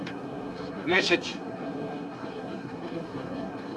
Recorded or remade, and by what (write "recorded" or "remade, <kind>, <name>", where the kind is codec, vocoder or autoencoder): remade, codec, SNAC